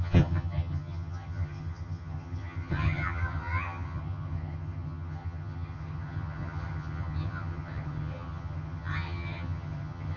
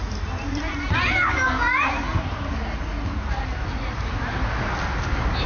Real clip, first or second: second